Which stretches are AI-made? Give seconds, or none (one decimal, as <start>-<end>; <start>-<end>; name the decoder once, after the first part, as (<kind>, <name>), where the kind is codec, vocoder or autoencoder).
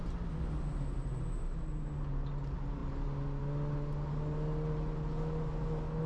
none